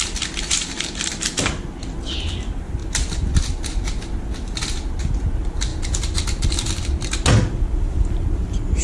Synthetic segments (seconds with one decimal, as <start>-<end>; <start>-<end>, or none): none